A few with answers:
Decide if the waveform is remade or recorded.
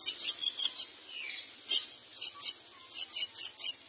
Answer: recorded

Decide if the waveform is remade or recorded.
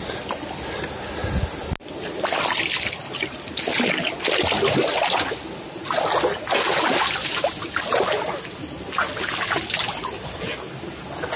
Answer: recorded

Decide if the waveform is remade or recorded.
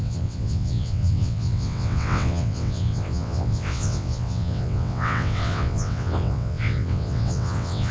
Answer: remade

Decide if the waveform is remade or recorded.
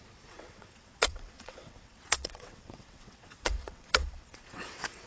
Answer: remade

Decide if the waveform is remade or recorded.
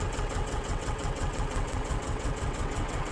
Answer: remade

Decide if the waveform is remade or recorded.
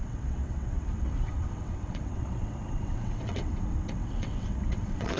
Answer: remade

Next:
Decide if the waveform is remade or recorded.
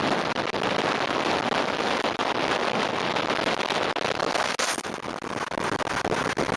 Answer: recorded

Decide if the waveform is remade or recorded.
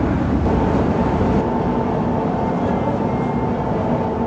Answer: recorded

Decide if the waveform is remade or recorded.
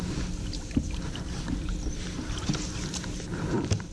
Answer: recorded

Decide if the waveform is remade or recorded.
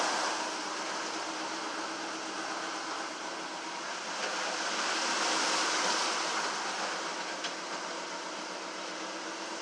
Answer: recorded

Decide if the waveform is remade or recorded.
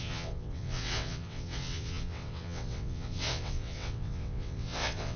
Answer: remade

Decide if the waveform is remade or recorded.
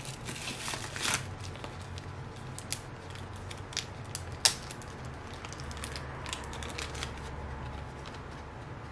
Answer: recorded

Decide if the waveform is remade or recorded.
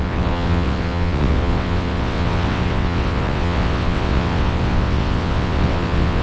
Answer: remade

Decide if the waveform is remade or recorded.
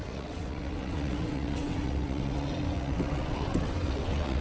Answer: remade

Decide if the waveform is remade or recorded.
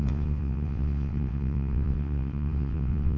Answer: remade